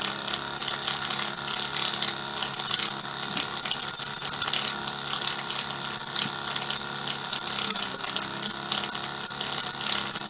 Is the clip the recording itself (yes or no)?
yes